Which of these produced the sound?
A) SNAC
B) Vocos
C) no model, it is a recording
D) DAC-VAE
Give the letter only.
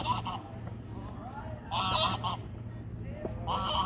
C